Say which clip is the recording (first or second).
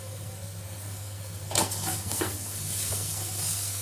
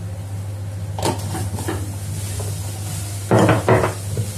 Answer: second